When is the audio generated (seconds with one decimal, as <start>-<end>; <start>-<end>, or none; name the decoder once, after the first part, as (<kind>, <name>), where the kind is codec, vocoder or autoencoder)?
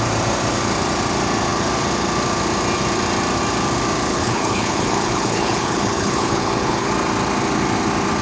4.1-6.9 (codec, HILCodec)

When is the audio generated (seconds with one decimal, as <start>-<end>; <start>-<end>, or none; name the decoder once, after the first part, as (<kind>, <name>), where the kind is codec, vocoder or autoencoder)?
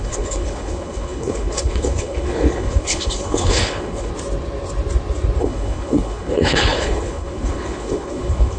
0.0-4.1 (codec, HILCodec); 5.4-8.6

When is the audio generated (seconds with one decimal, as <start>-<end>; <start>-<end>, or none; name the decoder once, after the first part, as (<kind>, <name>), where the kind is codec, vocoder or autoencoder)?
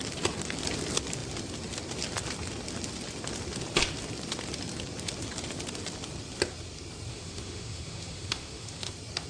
7.1-8.9 (autoencoder, DAC-VAE)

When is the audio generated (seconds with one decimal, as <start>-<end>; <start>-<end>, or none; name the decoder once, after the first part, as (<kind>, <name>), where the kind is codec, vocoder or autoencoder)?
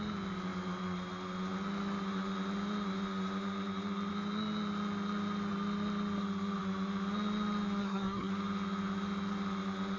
7.8-8.3 (codec, SNAC)